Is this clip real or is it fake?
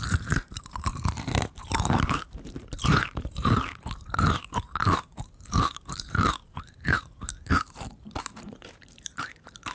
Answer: fake